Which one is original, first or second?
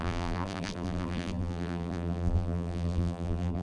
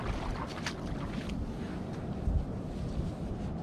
second